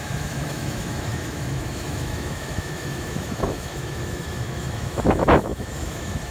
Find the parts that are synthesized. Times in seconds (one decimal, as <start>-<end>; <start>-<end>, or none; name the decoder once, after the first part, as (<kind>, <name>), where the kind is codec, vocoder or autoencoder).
0.0-6.3 (autoencoder, DAC-VAE)